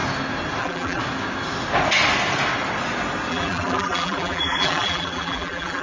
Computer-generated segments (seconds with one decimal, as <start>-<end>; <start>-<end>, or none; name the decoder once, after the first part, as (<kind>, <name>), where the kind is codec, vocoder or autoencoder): 0.6-1.0 (vocoder, BigVGAN v2); 3.3-5.8